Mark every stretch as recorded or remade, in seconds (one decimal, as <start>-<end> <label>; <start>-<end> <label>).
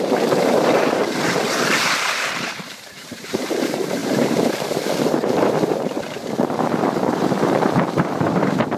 0.0-8.8 remade